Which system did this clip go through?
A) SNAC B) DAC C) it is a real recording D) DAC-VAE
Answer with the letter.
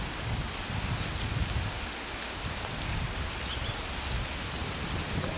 C